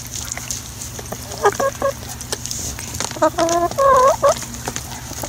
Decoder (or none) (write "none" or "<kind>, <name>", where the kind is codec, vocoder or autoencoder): none